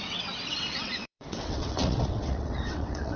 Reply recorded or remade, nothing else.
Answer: remade